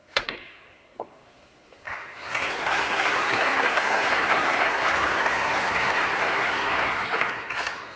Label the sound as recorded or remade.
remade